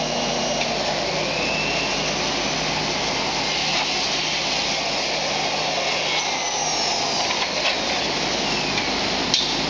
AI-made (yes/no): no